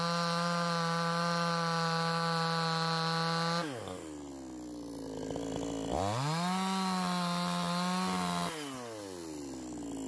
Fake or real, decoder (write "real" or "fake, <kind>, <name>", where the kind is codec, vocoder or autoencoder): real